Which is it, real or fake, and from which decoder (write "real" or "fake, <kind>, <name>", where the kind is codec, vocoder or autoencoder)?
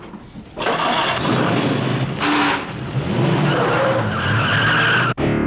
real